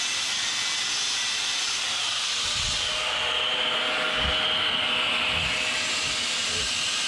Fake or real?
real